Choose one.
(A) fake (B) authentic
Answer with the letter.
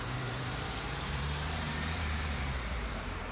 A